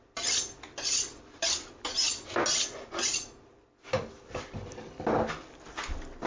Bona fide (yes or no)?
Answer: yes